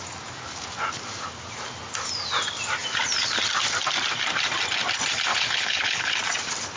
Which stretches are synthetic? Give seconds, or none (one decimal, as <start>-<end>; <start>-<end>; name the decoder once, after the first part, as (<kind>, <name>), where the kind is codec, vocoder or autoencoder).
5.3-6.2 (codec, HILCodec)